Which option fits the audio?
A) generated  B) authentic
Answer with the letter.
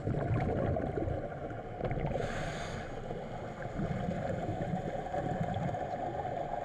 B